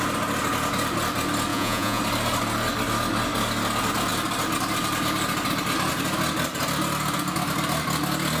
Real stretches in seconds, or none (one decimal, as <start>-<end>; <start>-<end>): 0.0-1.5; 2.0-8.4